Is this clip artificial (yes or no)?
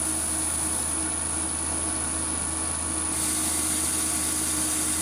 no